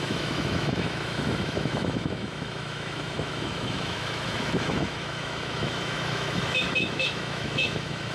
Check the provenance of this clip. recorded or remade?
remade